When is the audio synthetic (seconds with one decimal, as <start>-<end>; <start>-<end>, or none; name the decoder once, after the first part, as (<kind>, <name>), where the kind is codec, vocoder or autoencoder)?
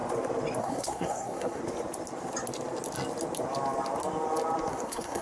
0.6-1.6 (codec, SNAC); 4.7-5.2